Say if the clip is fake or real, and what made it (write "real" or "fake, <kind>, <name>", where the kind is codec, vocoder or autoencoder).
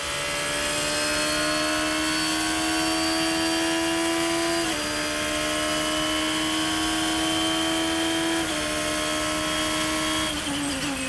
real